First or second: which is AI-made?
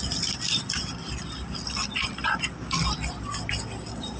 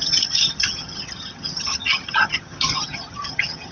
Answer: second